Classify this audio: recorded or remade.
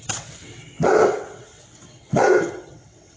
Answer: remade